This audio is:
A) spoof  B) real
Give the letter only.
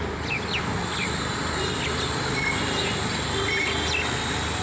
B